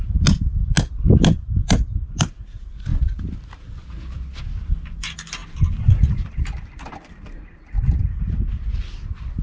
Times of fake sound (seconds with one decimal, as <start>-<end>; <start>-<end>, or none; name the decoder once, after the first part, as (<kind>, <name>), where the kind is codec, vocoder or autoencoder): none